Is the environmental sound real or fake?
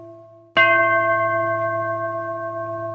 real